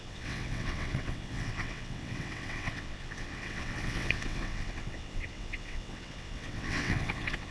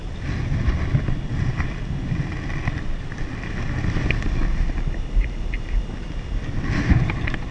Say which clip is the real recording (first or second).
second